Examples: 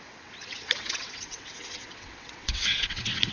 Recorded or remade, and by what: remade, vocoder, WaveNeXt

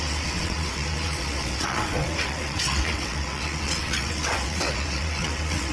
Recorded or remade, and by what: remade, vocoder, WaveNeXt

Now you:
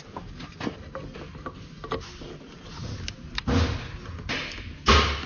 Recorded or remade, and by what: recorded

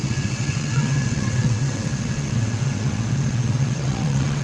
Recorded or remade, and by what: remade, vocoder, WaveNeXt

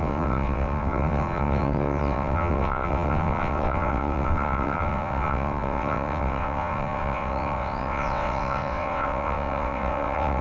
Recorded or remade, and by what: remade, vocoder, WaveNeXt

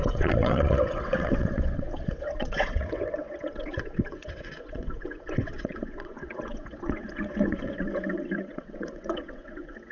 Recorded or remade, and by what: remade, vocoder, WaveNeXt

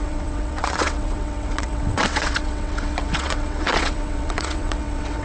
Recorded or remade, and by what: remade, vocoder, WaveNeXt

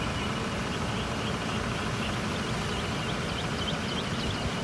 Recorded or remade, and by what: recorded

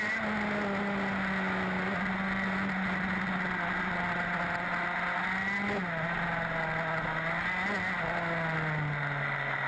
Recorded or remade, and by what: recorded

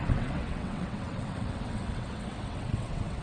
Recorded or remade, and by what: remade, vocoder, WaveNeXt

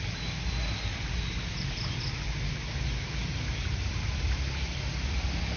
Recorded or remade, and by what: recorded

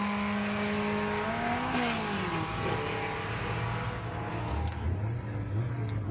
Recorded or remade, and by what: recorded